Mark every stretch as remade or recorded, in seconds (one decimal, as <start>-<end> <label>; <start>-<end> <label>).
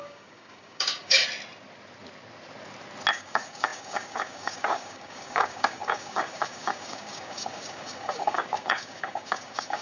0.0-1.2 remade; 1.2-3.1 recorded; 3.1-9.8 remade